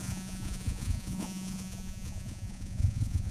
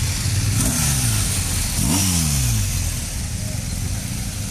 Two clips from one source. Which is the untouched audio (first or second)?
second